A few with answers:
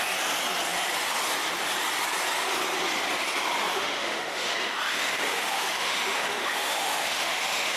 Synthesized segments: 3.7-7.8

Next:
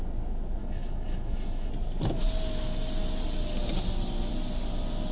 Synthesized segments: 0.6-1.7

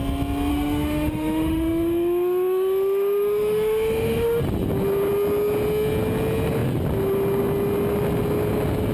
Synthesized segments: 0.5-4.4